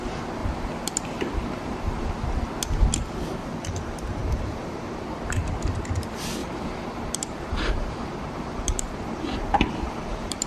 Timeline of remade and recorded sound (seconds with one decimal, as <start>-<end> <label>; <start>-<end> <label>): 0.0-0.4 recorded; 0.4-2.1 remade; 2.1-4.2 recorded; 4.2-5.1 remade; 5.1-6.4 recorded; 6.4-10.5 remade